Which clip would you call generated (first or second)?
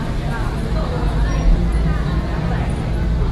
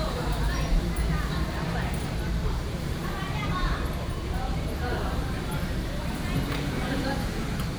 second